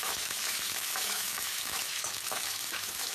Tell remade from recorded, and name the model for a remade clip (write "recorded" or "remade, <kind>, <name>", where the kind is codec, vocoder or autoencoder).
remade, autoencoder, DAC-VAE